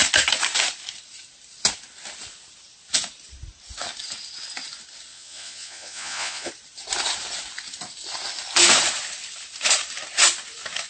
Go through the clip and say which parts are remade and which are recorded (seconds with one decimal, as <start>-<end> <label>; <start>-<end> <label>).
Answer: 0.0-5.1 recorded; 5.1-6.5 remade; 6.5-10.9 recorded

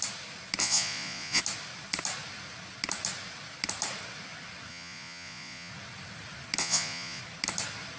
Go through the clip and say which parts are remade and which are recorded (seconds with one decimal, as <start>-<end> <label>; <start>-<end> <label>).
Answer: 0.0-0.6 recorded; 0.6-1.4 remade; 1.4-4.7 recorded; 4.7-5.7 remade; 5.7-6.6 recorded; 6.6-7.2 remade; 7.2-8.0 recorded